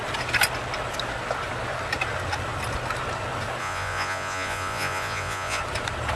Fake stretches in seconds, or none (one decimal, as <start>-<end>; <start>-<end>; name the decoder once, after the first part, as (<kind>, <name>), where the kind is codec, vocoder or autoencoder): 3.6-5.6 (vocoder, Vocos)